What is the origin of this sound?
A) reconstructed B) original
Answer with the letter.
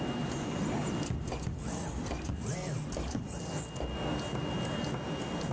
B